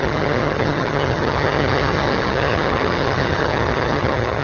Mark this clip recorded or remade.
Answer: remade